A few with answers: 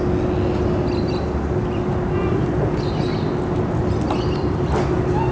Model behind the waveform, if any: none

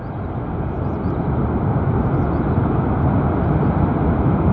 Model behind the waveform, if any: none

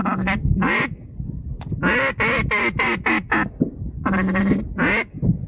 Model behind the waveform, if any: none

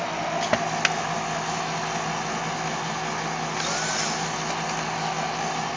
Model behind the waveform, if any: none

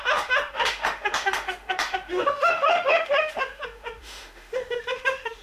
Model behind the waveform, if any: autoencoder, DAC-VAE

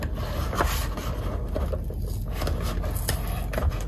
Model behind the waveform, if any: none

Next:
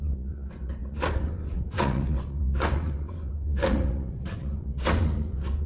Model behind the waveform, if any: vocoder, WaveNeXt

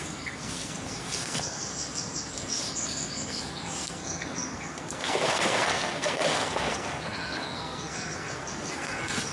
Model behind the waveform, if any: codec, SNAC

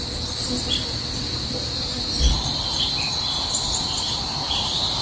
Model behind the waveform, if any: none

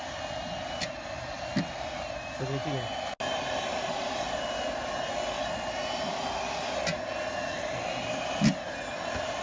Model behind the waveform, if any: none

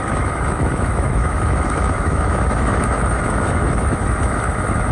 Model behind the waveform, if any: autoencoder, DAC-VAE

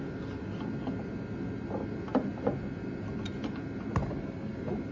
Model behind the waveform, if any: none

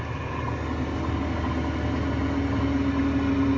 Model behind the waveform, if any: none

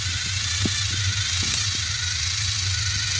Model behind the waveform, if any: none